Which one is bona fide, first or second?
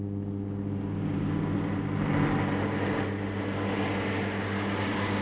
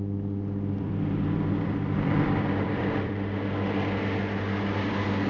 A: first